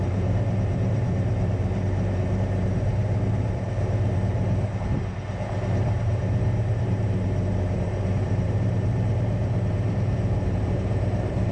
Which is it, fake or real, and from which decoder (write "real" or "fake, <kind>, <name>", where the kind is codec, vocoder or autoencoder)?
fake, vocoder, BigVGAN v2